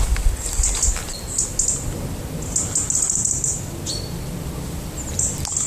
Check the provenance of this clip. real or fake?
real